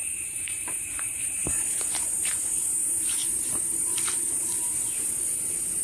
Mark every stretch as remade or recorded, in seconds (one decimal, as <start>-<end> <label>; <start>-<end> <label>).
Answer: 0.0-1.5 remade; 1.5-3.2 recorded; 3.2-4.0 remade; 4.0-5.8 recorded